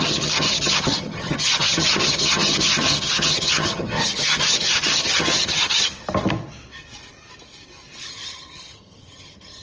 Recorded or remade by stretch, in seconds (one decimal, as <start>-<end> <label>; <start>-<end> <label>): 0.0-5.9 remade; 5.9-8.1 recorded; 8.1-9.6 remade